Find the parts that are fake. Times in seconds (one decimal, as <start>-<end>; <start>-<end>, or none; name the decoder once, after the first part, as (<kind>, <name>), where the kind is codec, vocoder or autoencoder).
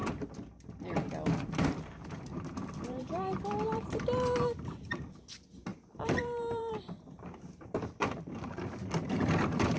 0.0-5.1 (vocoder, BigVGAN v2); 5.7-9.8